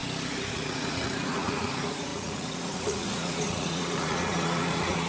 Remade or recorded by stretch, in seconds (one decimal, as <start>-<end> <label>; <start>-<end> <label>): 0.0-0.5 recorded; 0.5-5.1 remade